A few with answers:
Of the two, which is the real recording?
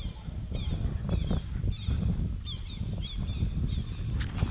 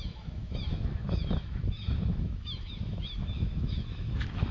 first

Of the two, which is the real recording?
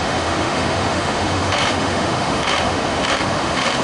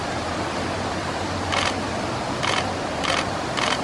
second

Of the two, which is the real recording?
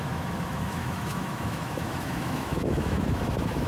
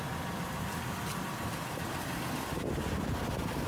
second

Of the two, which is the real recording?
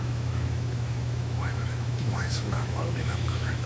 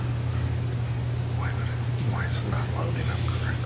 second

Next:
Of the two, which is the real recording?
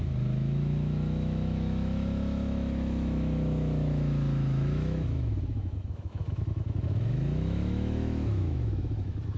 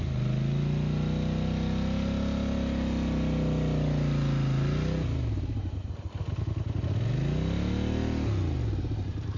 second